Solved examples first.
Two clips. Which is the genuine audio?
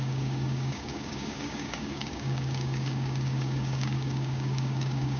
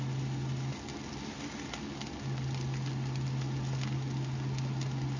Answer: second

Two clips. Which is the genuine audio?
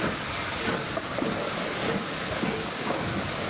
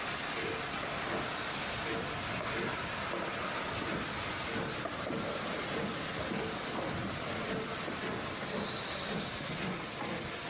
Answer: second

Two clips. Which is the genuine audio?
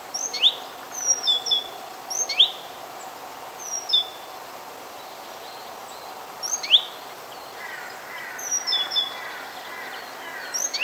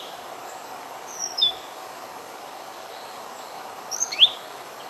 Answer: first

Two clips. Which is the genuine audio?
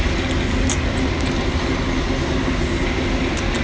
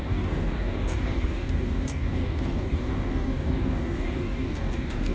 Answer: first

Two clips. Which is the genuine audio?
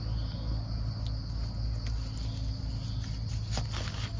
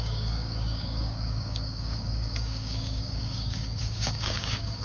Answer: first